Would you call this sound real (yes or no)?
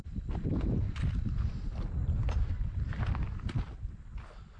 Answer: yes